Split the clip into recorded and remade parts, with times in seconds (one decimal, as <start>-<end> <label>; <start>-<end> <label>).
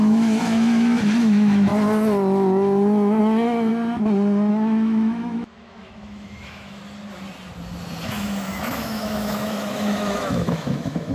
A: 0.0-1.7 remade; 1.7-3.2 recorded; 3.2-3.7 remade; 3.7-4.5 recorded; 4.5-6.8 remade; 6.8-8.0 recorded; 8.0-11.1 remade